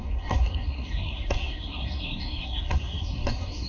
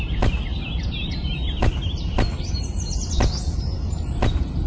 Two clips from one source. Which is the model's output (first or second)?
first